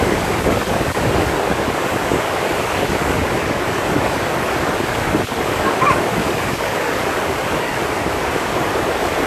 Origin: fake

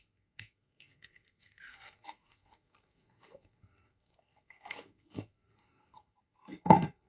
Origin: fake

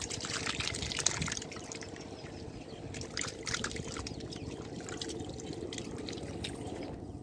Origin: real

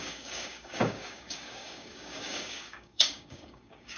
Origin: fake